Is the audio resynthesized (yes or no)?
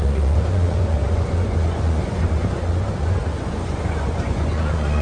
yes